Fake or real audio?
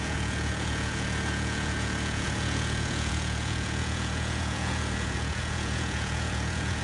fake